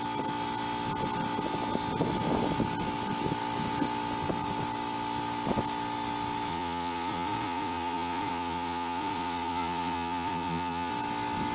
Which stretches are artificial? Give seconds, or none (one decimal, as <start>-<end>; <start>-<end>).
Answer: 6.5-10.9